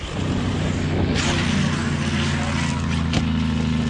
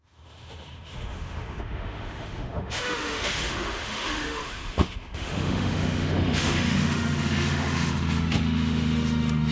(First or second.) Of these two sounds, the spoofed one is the second